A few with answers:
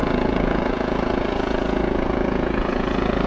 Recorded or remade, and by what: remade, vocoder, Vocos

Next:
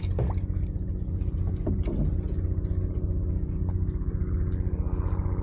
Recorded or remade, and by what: recorded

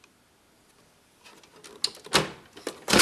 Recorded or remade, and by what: recorded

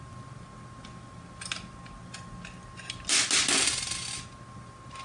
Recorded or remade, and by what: recorded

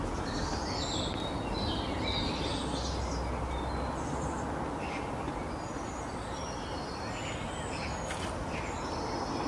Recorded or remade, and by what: recorded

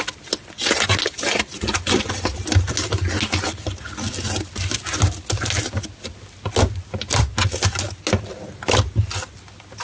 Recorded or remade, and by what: recorded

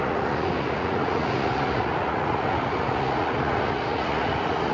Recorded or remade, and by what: remade, vocoder, Vocos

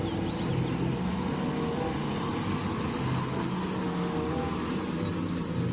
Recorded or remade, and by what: recorded